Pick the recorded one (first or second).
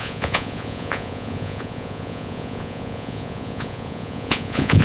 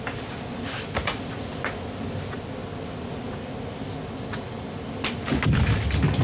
second